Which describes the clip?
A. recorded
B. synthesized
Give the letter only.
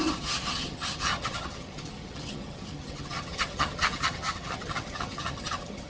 B